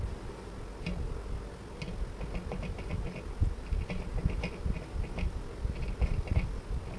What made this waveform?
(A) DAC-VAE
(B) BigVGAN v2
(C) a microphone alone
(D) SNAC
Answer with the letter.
C